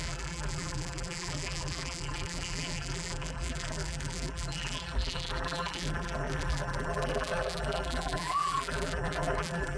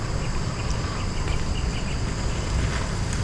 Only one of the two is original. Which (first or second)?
second